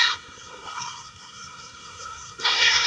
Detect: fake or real fake